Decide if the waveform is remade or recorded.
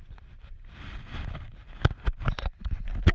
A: recorded